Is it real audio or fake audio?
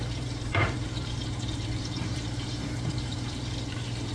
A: fake